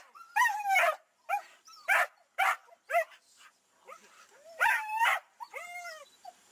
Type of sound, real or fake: real